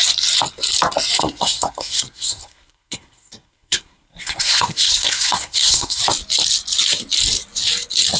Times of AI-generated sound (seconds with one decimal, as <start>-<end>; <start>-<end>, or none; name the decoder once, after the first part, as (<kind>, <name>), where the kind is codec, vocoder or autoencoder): 1.2-6.0 (codec, SNAC)